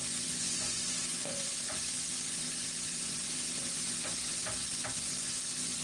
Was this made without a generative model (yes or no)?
no